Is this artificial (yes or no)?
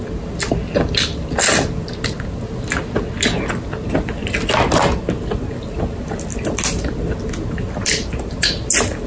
no